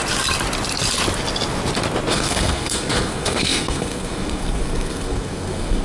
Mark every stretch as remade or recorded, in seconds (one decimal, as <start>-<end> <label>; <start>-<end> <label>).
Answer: 0.0-2.1 recorded; 2.1-5.8 remade